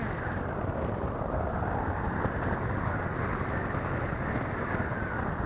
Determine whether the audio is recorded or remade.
recorded